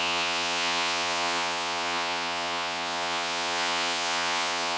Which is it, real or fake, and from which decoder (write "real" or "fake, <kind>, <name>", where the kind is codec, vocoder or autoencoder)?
fake, vocoder, Vocos